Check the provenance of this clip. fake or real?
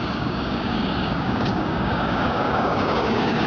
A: fake